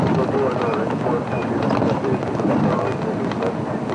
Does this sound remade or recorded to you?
recorded